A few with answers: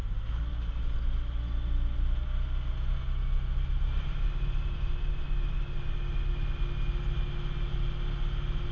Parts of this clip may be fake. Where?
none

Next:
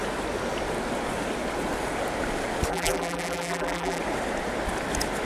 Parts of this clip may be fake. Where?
2.7-4.0

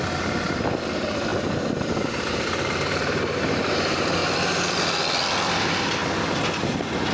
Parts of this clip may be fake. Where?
0.0-1.3; 2.2-4.2; 5.5-6.0

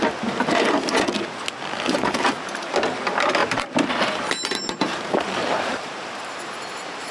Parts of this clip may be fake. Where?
3.4-3.9; 4.4-7.1